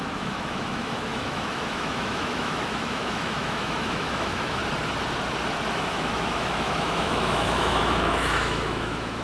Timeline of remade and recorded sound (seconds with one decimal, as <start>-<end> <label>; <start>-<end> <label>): 0.0-4.6 remade; 4.6-5.7 recorded; 5.7-9.2 remade

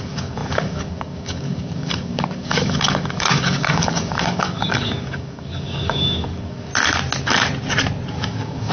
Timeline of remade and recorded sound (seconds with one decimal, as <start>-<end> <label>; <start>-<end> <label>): 0.0-6.7 remade; 6.7-8.1 recorded; 8.1-8.7 remade

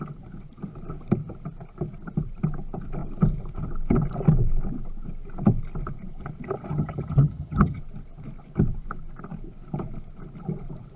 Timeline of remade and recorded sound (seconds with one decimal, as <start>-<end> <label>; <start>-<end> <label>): 0.0-6.7 recorded; 6.7-7.8 remade; 7.8-11.0 recorded

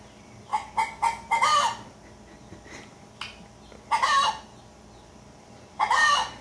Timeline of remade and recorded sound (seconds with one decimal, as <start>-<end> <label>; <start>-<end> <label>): 0.0-0.5 remade; 0.5-4.3 recorded; 4.3-6.4 remade

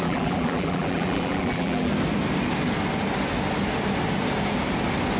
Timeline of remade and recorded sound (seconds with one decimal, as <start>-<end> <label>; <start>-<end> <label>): 0.0-1.9 remade; 1.9-5.2 recorded

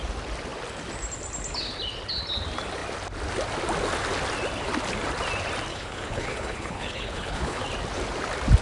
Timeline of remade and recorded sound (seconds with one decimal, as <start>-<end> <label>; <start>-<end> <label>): 0.0-5.7 recorded; 5.7-7.6 remade; 7.6-8.6 recorded